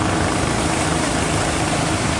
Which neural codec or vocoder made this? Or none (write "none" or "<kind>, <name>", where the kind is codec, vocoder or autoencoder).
vocoder, BigVGAN v2